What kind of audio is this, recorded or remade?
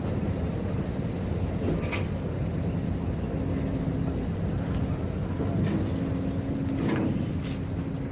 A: recorded